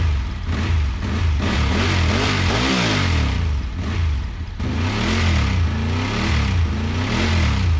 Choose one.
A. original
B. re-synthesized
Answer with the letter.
A